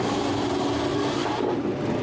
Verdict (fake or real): real